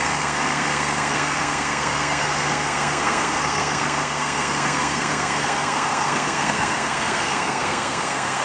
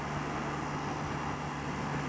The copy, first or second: first